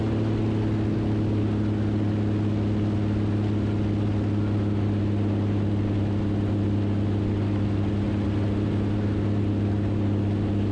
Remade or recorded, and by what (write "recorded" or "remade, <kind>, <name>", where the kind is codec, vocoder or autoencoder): recorded